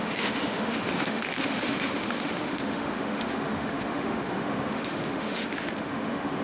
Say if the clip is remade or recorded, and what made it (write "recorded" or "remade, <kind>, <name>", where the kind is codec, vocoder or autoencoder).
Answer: remade, autoencoder, DAC-VAE